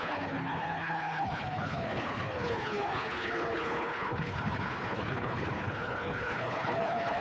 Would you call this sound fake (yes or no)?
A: yes